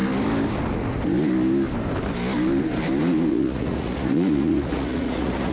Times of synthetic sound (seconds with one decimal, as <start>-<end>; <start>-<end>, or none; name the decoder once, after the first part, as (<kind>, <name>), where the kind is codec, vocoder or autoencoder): 3.3-5.5 (vocoder, Vocos)